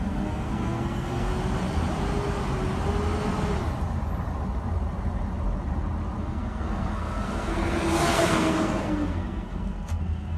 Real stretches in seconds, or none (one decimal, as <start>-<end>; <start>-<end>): 1.3-6.2